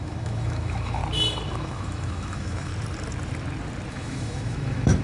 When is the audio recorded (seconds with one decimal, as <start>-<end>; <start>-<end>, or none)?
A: 1.0-1.5; 2.7-3.9